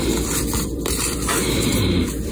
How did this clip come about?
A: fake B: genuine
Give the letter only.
A